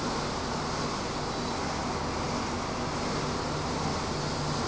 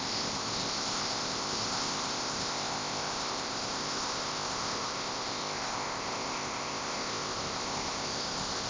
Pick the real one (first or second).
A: first